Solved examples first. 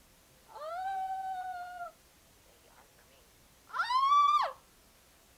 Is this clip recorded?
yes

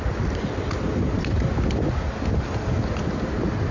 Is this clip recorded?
yes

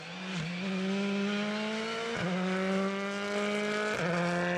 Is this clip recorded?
yes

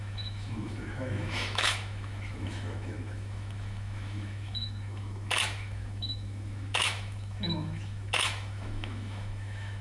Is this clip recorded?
no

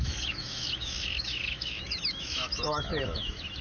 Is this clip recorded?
no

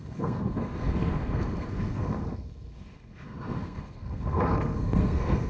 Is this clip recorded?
no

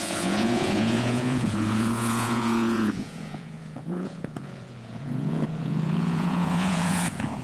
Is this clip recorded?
no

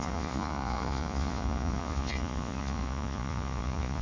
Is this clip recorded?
no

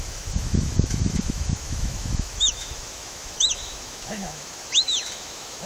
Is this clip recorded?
no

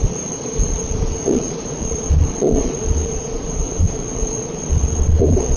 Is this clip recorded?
no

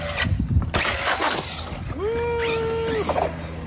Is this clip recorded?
yes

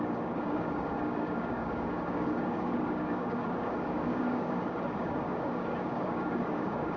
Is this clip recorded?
no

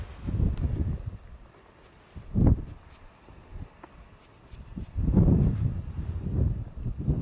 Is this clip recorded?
yes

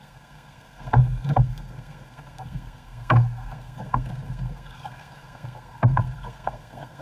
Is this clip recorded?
no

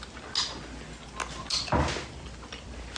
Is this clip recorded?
yes